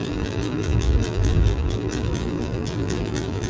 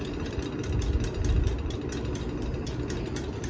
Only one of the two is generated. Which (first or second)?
first